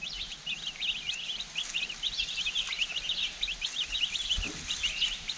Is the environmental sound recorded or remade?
recorded